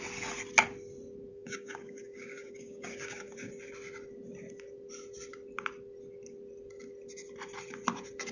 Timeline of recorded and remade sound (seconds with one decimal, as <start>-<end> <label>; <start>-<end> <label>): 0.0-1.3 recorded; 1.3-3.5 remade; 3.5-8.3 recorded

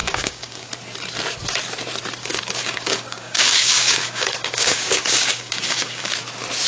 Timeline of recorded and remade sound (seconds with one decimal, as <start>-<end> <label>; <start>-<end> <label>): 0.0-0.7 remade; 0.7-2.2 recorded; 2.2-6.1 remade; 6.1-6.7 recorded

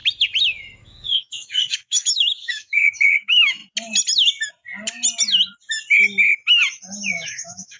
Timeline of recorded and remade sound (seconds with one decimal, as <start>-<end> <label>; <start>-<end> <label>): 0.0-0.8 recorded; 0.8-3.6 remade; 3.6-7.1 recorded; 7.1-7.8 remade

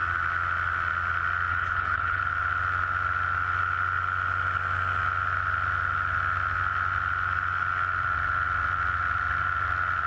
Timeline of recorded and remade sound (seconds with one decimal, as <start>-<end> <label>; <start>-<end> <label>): 0.0-1.5 recorded; 1.5-2.2 remade; 2.2-10.1 recorded